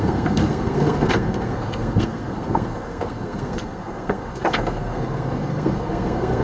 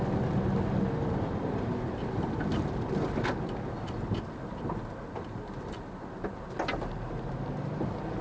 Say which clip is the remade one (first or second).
first